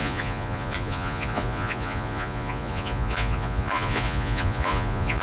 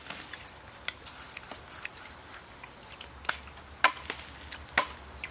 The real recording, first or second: second